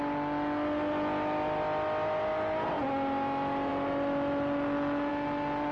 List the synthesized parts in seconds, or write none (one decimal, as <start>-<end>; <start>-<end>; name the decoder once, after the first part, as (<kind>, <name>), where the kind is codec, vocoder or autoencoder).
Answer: none